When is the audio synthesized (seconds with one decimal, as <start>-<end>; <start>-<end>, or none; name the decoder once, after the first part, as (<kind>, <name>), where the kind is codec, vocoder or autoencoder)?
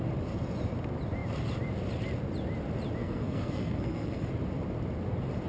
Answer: 3.0-4.3 (codec, SNAC)